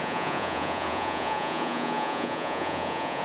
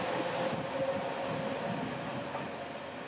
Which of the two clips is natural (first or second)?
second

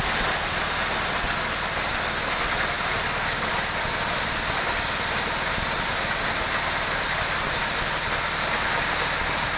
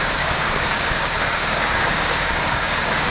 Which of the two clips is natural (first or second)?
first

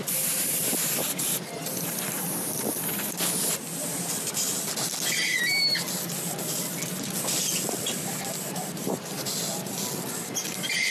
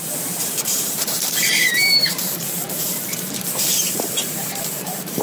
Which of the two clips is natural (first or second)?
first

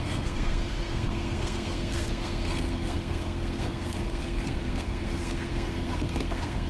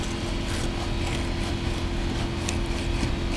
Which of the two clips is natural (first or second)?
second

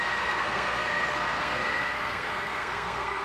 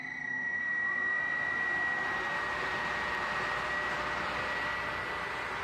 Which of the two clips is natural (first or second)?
second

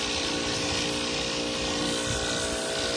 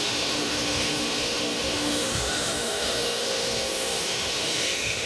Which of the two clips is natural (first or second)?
first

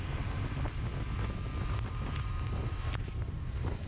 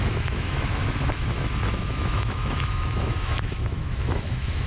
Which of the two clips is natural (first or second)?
first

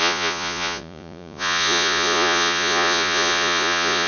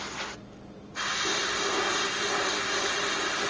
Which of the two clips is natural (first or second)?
second